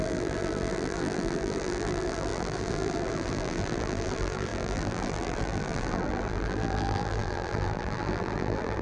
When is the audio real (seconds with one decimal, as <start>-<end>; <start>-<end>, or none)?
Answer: none

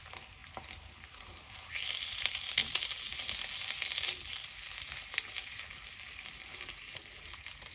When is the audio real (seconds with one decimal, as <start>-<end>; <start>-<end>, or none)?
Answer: 0.0-7.7

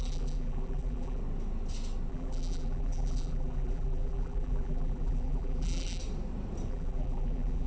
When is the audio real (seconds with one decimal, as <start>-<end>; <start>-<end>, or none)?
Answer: 1.2-2.1; 6.0-6.7

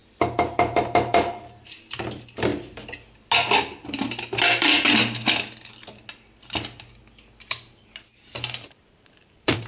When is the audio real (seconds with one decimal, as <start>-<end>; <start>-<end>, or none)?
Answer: 2.5-7.7

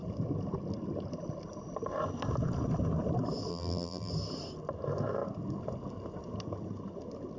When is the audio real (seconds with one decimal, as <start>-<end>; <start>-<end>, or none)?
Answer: 0.0-3.5; 4.1-7.4